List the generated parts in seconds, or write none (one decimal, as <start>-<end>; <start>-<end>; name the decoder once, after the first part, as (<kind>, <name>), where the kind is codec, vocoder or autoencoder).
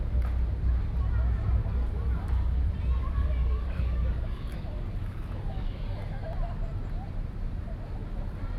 1.6-2.6 (codec, DAC); 3.0-6.2